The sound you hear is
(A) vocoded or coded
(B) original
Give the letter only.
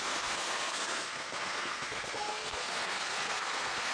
A